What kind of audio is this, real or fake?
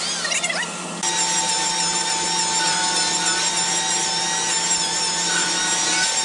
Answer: real